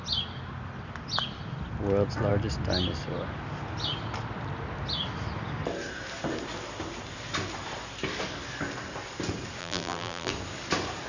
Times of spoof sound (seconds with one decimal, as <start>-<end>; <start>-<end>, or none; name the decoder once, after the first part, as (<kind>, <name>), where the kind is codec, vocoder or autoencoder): 9.6-10.3 (vocoder, BigVGAN v2)